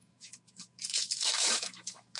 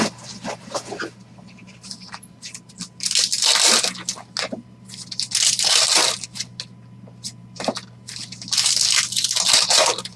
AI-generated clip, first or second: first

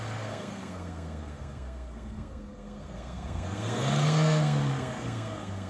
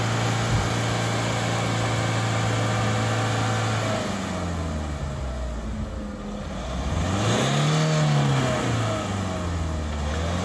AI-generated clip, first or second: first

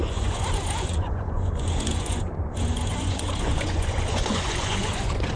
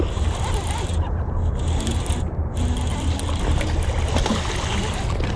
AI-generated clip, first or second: first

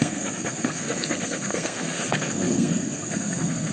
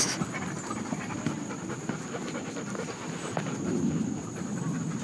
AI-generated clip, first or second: first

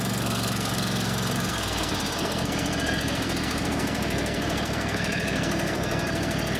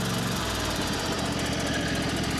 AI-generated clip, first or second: first